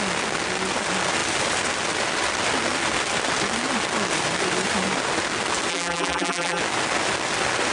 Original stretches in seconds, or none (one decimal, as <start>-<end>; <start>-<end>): 0.0-5.7; 6.6-7.7